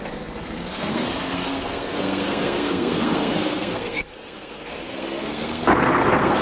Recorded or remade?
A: remade